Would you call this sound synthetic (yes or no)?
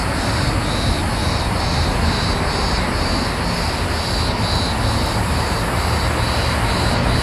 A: no